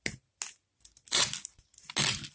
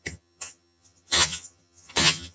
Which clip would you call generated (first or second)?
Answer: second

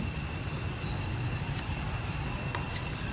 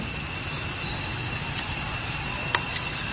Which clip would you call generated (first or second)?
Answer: first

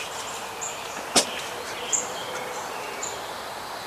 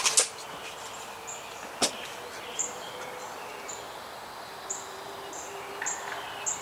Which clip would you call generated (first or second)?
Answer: first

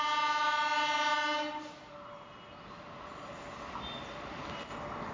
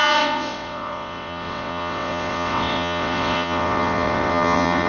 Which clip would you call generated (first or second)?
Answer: second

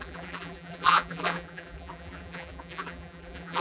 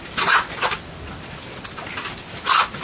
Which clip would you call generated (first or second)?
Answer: first